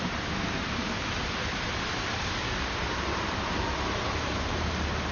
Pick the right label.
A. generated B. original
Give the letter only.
A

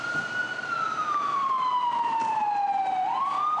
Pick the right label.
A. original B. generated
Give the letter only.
A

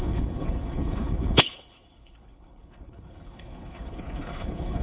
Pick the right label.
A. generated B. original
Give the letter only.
A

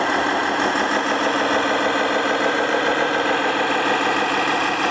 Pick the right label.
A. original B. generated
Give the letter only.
A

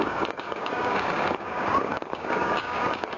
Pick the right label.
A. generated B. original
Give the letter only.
A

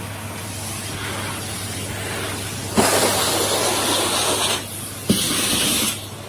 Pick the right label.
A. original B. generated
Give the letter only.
A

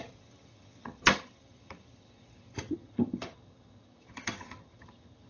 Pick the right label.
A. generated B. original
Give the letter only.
A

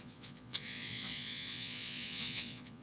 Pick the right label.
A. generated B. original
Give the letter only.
A